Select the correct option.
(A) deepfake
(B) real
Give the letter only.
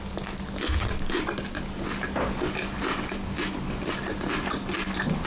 B